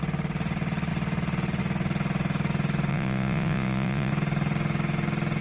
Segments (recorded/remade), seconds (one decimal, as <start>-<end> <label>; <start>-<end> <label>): 0.0-2.9 recorded; 2.9-4.1 remade; 4.1-5.4 recorded